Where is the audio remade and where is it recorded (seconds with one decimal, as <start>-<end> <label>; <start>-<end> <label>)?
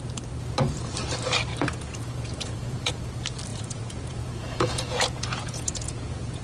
0.0-1.5 recorded; 1.5-3.0 remade; 3.0-3.5 recorded; 3.5-6.4 remade